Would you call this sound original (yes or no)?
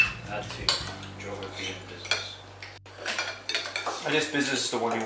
yes